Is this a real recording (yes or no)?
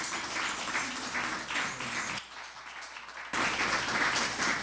yes